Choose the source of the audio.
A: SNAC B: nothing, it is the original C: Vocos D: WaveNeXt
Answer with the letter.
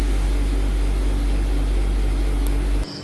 B